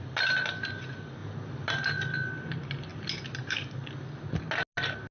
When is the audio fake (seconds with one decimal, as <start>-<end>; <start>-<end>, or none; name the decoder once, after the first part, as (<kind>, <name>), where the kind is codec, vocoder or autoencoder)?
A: none